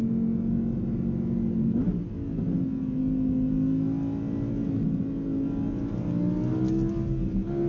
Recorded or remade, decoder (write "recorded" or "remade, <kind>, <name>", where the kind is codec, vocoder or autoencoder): recorded